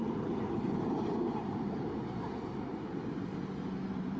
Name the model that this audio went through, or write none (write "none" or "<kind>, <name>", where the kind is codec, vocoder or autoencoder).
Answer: vocoder, BigVGAN v2